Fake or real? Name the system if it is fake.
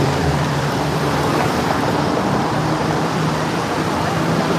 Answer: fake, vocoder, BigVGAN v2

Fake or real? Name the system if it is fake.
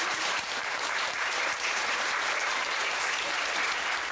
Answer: fake, vocoder, BigVGAN v2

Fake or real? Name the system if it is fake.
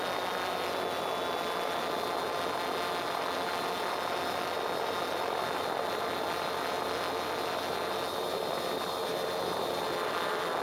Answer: real